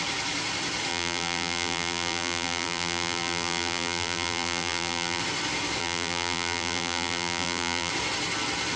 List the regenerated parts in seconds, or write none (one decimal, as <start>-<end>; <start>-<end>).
0.9-5.2; 5.8-7.9